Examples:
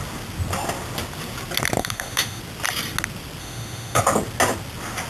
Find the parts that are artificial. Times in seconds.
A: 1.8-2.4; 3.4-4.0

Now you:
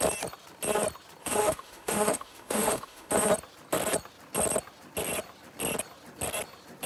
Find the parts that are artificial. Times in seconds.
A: 1.2-3.1

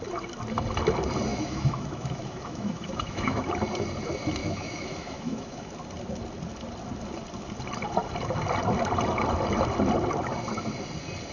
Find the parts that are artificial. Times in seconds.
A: 1.3-3.5; 4.4-5.7

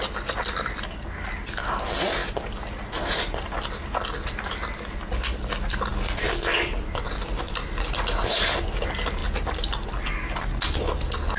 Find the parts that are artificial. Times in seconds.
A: none